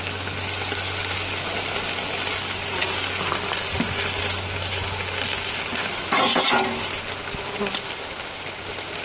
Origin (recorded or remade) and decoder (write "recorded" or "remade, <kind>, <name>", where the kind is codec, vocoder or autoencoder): recorded